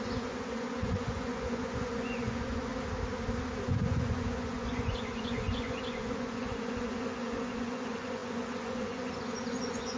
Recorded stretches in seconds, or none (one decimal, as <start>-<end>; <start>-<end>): 2.7-3.6